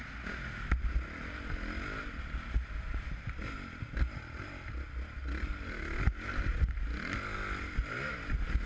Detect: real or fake real